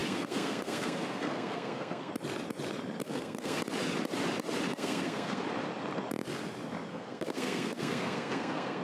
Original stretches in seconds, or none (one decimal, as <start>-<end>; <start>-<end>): 2.1-3.0; 3.6-4.7; 5.4-6.9